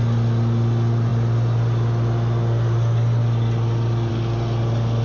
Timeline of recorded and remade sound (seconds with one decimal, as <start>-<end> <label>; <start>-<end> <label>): 0.0-5.0 recorded